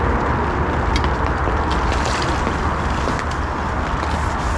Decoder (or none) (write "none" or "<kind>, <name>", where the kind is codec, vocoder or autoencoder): none